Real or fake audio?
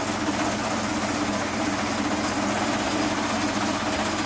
real